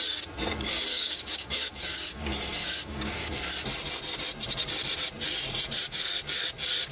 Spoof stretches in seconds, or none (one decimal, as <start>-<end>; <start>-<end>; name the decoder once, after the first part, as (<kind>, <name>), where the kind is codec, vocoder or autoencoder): 0.9-2.2 (codec, DAC); 2.6-3.3